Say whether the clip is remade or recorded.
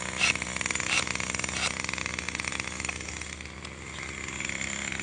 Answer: recorded